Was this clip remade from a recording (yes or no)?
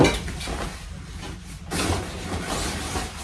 no